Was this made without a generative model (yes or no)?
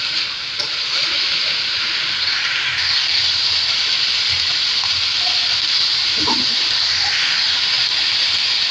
yes